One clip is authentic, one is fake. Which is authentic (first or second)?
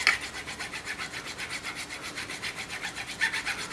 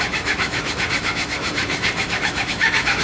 first